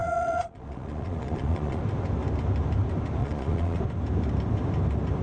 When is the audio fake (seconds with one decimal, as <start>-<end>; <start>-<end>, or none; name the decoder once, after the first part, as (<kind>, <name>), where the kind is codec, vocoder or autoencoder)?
0.0-1.8 (vocoder, Vocos); 3.2-3.8